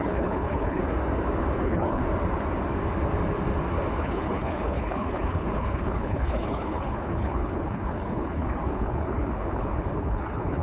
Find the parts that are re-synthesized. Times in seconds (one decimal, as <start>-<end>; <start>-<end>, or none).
0.0-0.8; 1.6-2.0; 4.0-10.6